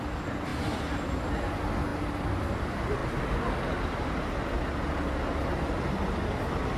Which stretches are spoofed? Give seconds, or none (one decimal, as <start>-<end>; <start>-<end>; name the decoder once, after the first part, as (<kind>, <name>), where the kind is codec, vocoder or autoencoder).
1.9-2.4 (vocoder, BigVGAN v2)